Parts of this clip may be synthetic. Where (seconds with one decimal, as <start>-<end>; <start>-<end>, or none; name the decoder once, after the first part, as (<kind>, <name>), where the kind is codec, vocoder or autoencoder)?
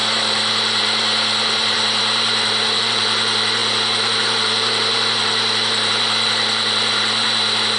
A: 0.0-7.8 (vocoder, BigVGAN v2)